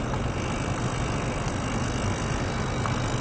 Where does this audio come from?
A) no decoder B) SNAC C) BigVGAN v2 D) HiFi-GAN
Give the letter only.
A